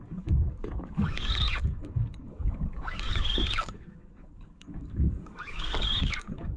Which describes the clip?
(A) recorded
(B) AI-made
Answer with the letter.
B